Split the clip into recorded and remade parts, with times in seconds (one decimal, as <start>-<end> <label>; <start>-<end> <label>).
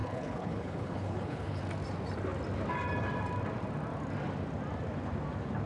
0.0-1.6 remade; 1.6-5.7 recorded